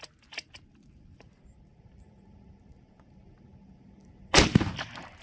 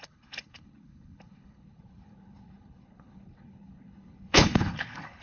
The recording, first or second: first